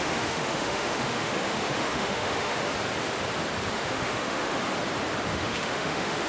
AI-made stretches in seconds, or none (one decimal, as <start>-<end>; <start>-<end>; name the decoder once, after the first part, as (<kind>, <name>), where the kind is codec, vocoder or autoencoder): 0.0-2.7 (autoencoder, DAC-VAE); 3.7-4.6; 5.3-6.3